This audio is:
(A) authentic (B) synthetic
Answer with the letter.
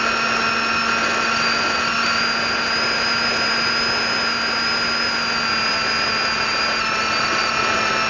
A